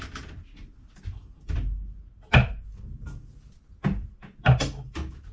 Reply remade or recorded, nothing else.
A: recorded